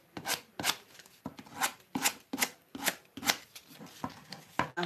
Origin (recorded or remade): recorded